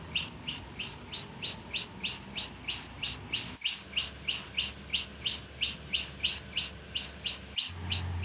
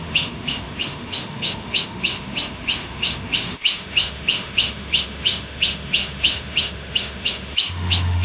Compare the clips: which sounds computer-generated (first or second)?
second